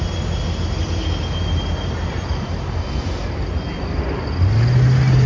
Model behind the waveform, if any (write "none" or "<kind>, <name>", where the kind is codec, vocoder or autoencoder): none